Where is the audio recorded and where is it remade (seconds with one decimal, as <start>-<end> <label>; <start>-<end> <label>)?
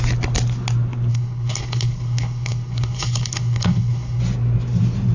0.0-1.1 recorded; 1.1-4.2 remade; 4.2-5.1 recorded